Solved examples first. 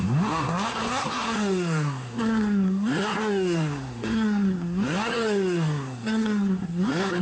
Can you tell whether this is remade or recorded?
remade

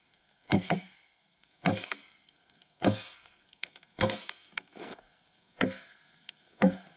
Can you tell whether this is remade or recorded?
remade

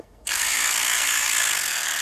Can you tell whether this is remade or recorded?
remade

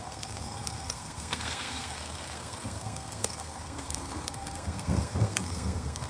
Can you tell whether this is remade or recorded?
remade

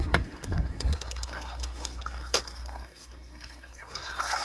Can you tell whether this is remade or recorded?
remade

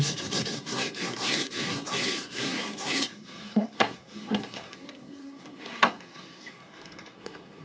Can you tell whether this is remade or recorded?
remade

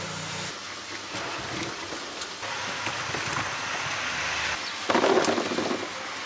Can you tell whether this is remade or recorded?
recorded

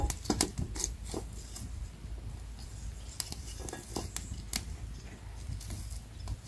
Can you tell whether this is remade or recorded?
recorded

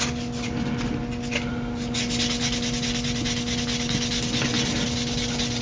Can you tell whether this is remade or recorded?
recorded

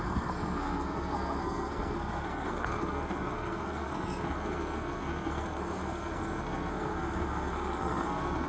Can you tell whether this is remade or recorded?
remade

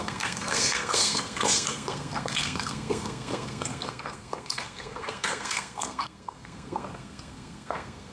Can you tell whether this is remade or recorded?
remade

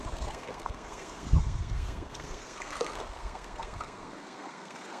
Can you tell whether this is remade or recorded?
remade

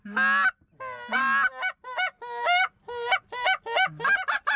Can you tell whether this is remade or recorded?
recorded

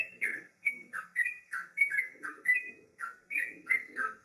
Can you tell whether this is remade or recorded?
remade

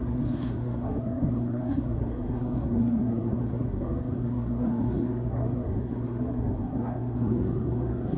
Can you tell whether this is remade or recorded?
remade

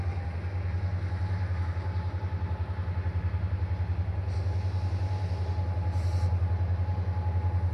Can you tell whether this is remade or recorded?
recorded